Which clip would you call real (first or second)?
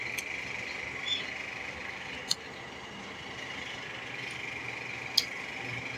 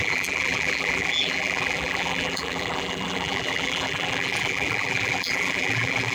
first